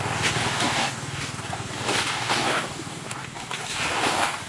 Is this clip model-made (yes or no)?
yes